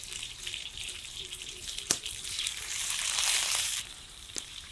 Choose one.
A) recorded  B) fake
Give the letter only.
B